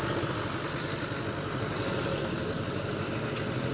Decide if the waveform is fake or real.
real